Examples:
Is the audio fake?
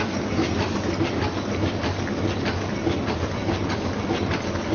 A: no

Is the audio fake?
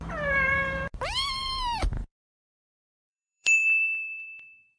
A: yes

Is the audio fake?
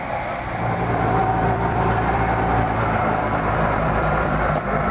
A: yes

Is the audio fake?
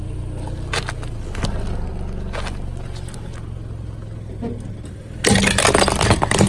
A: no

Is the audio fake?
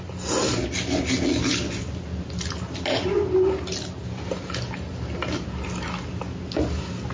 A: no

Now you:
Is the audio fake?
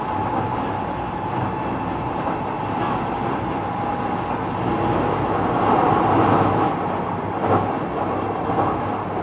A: no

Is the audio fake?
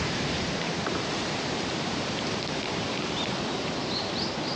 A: yes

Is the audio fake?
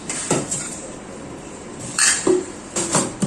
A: yes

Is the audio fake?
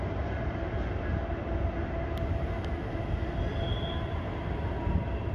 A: no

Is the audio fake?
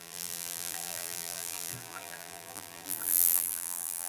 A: yes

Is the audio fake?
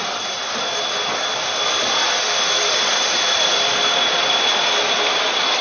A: no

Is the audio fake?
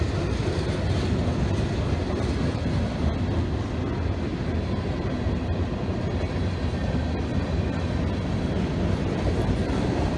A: no